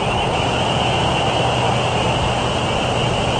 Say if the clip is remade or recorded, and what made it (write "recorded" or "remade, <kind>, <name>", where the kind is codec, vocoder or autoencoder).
recorded